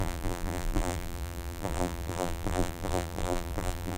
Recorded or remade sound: remade